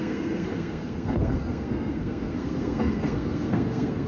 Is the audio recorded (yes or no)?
no